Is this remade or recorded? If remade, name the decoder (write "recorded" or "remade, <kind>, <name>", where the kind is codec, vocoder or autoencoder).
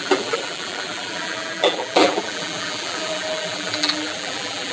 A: remade, vocoder, BigVGAN v2